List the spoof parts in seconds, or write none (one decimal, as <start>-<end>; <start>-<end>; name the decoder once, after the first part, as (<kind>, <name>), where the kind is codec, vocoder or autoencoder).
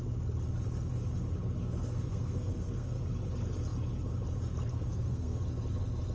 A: 1.6-3.0 (codec, SNAC); 4.7-5.4